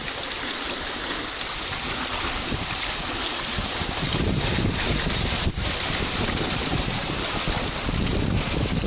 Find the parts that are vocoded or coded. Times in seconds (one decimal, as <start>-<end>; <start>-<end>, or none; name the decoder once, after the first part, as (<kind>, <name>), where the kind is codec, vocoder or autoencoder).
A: 3.6-7.2 (vocoder, BigVGAN v2); 8.1-8.9